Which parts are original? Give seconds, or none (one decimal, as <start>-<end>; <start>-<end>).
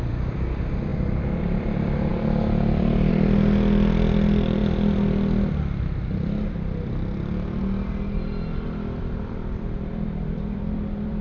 0.9-1.4; 2.1-3.1; 4.6-9.0